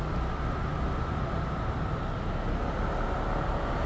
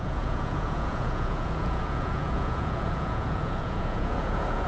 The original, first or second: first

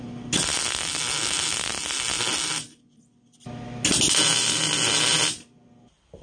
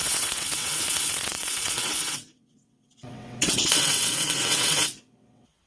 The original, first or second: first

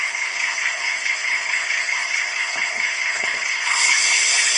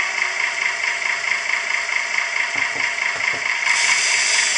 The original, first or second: second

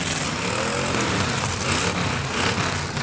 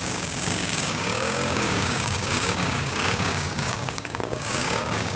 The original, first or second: first